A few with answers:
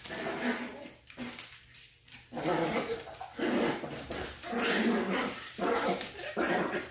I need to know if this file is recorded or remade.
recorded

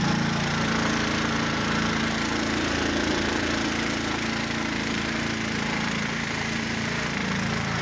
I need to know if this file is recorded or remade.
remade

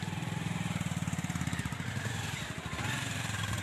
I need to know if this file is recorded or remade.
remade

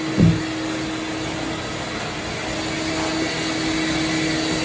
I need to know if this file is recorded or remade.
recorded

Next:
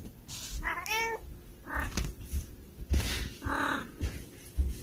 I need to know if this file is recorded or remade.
remade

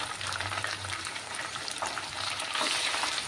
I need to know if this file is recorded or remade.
remade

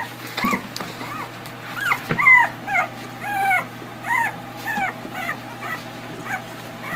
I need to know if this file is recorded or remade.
remade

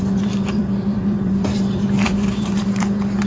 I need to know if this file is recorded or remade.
remade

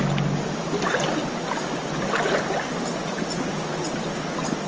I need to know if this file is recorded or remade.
recorded